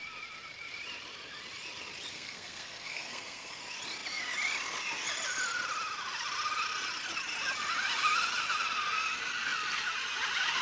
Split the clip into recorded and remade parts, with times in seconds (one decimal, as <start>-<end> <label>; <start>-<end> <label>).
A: 0.0-2.1 recorded; 2.1-3.6 remade; 3.6-10.6 recorded

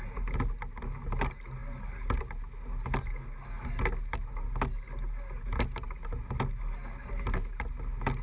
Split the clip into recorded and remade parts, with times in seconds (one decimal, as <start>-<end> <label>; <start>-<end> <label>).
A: 0.0-8.2 recorded